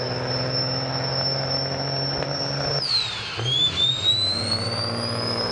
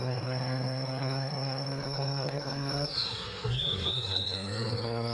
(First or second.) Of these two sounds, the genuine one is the first